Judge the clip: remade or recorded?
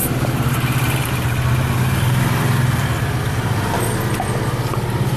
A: recorded